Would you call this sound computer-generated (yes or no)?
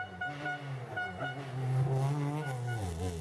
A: no